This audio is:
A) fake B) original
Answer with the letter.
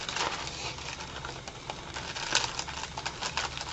B